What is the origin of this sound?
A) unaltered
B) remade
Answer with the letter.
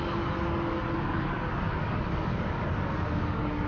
B